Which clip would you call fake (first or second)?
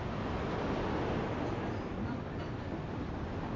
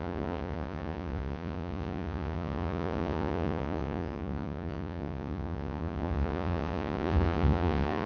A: second